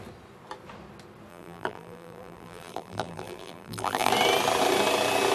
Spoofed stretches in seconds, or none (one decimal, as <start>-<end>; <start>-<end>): 1.3-4.1